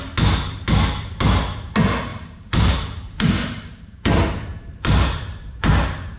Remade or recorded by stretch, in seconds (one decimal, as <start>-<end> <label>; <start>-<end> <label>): 0.0-2.1 recorded; 2.1-5.7 remade; 5.7-6.2 recorded